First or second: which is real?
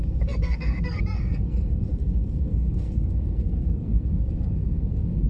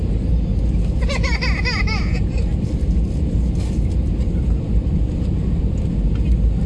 second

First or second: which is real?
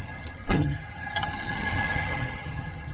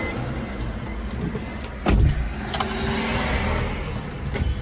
second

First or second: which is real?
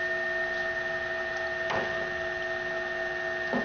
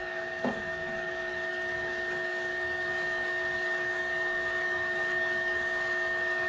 first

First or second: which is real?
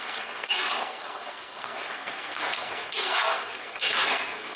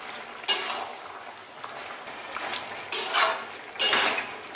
second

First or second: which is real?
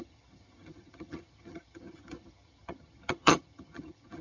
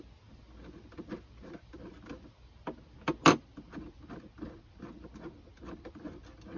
second